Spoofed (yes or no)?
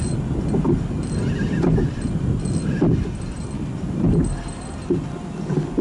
no